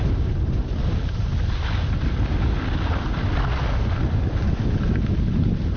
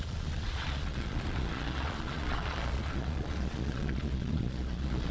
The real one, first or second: first